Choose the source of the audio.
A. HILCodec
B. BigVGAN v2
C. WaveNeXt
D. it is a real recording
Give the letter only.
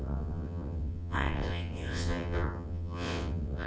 C